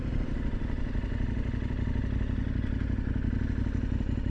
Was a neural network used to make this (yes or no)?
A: no